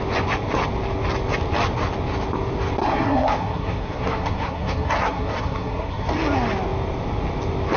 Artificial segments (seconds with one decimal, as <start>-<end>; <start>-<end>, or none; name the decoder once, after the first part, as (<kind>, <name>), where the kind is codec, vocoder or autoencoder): 2.8-6.1 (codec, SNAC)